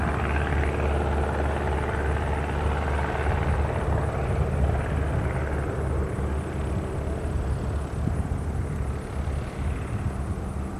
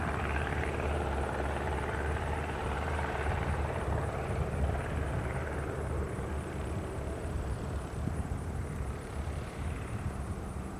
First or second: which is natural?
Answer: first